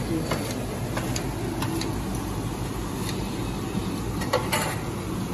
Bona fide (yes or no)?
yes